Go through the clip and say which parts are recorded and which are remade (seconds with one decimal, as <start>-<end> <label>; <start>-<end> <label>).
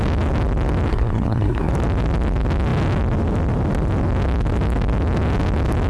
0.0-0.9 recorded; 0.9-1.7 remade; 1.7-5.9 recorded